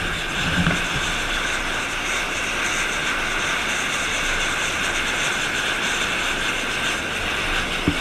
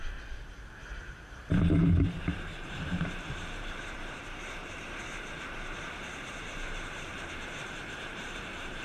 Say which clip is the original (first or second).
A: first